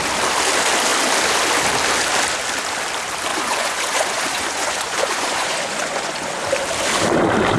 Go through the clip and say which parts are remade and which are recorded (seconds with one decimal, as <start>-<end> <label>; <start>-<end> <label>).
0.0-3.3 recorded; 3.3-6.5 remade; 6.5-7.6 recorded